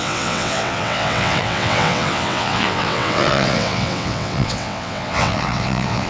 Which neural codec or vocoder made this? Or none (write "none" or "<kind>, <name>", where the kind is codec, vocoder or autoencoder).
vocoder, WaveNeXt